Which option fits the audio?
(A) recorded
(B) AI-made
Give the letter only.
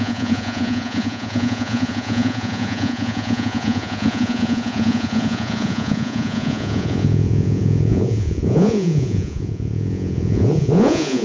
B